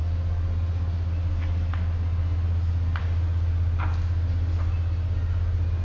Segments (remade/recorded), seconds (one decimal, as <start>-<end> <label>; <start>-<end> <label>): 0.0-5.8 recorded